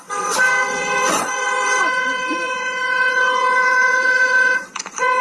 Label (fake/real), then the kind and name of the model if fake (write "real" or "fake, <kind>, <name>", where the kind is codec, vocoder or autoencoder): fake, vocoder, Vocos